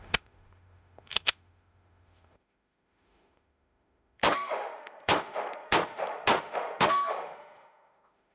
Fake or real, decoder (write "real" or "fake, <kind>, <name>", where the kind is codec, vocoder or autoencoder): fake, autoencoder, DAC-VAE